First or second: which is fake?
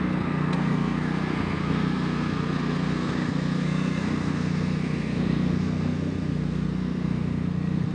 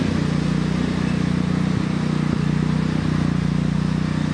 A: first